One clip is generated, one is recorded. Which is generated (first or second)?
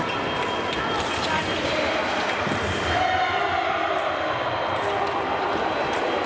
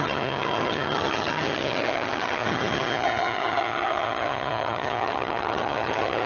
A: second